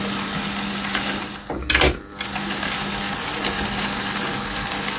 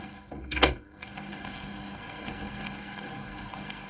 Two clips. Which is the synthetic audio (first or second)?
second